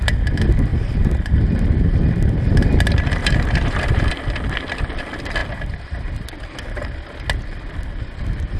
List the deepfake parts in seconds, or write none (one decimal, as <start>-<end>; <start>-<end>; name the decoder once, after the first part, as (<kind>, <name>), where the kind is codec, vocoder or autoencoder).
0.7-1.4 (vocoder, BigVGAN v2); 3.2-4.1